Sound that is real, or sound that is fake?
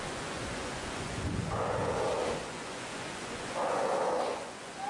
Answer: fake